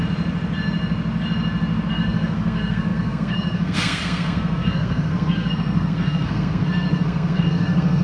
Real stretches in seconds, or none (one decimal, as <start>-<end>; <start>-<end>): 0.0-1.9